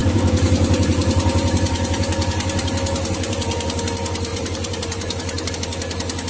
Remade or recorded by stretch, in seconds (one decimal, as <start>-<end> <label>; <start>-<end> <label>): 0.0-3.8 remade; 3.8-4.3 recorded; 4.3-5.5 remade; 5.5-6.3 recorded